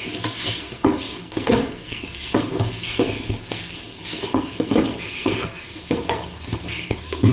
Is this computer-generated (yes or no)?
yes